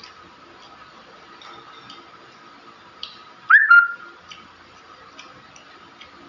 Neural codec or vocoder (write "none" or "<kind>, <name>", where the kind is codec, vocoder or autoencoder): none